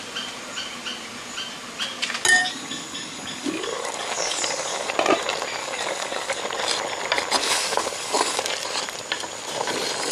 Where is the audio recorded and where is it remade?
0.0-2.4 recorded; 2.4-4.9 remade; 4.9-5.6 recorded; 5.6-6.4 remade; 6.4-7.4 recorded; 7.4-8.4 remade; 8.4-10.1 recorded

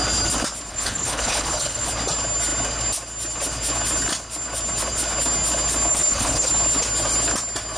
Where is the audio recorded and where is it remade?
0.0-0.7 recorded; 0.7-1.9 remade; 1.9-5.9 recorded; 5.9-6.5 remade; 6.5-7.8 recorded

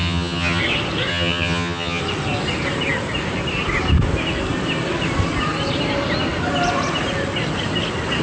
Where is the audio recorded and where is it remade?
0.0-0.6 remade; 0.6-1.1 recorded; 1.1-2.0 remade; 2.0-8.2 recorded

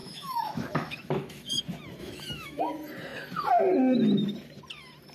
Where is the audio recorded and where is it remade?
0.0-1.6 remade; 1.6-2.0 recorded; 2.0-2.6 remade; 2.6-5.1 recorded